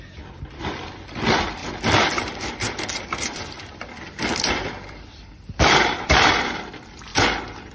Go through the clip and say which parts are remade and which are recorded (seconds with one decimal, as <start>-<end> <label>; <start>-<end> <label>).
0.0-7.1 remade; 7.1-7.7 recorded